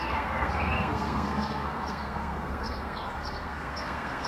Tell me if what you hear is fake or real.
fake